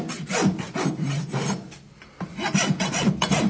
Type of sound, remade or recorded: recorded